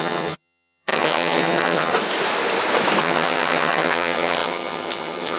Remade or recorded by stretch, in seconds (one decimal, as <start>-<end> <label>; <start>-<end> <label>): 0.0-1.9 remade; 1.9-3.0 recorded; 3.0-5.4 remade